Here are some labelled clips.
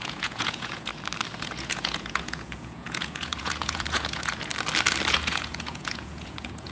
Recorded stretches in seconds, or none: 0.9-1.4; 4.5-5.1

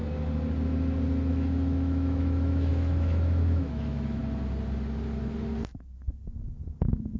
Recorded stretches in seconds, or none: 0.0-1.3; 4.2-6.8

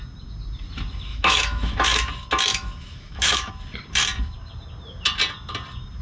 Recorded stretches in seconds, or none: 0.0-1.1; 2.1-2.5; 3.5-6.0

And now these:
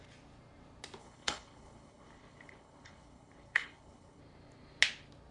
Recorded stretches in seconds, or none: 0.0-1.0; 4.2-5.3

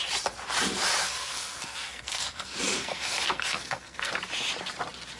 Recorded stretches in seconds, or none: 0.0-1.0; 4.1-5.2

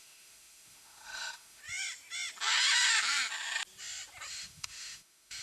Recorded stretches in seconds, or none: 1.6-4.3

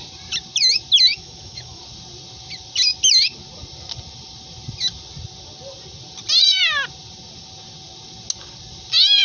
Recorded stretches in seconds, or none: 0.0-1.1; 1.8-9.2